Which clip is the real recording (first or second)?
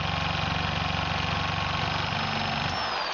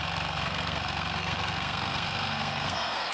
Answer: first